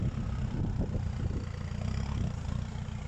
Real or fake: real